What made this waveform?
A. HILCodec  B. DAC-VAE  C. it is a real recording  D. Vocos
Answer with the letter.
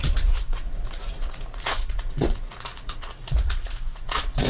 D